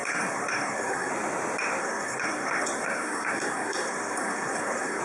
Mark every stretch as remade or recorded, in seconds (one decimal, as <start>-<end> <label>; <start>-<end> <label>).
0.0-1.1 remade; 1.1-1.8 recorded; 1.8-5.0 remade